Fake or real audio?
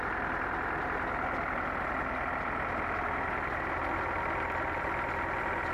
real